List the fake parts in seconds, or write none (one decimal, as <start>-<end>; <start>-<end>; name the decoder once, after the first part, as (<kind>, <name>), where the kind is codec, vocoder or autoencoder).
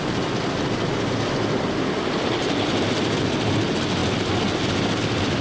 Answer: none